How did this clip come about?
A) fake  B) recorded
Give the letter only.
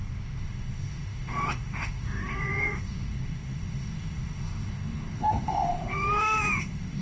A